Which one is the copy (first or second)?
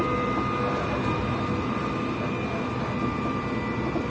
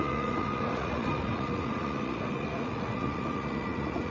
second